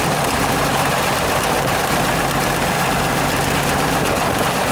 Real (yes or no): no